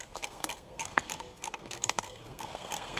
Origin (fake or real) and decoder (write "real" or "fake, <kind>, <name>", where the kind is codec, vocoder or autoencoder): fake, codec, SNAC